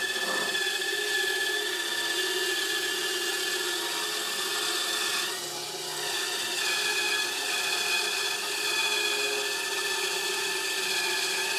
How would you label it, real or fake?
real